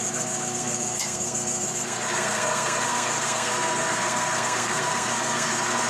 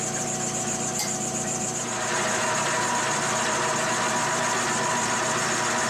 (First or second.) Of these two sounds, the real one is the second